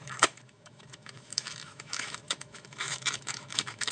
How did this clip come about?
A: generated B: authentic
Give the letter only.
A